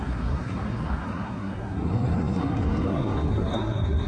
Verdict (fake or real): fake